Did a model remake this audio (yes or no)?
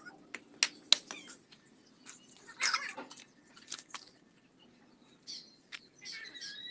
no